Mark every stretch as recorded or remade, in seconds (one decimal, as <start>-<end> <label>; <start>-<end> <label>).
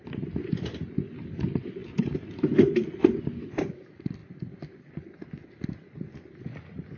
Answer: 0.0-1.8 recorded; 1.8-2.4 remade; 2.4-7.0 recorded